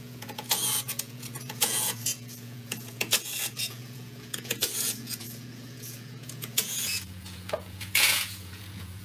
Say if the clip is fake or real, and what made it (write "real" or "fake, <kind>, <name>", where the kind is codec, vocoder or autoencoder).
fake, vocoder, Vocos